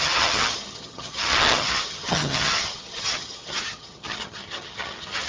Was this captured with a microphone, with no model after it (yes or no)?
no